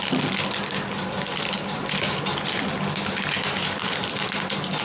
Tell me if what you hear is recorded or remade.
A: recorded